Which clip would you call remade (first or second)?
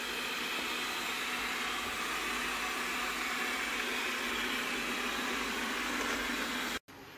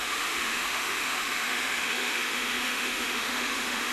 second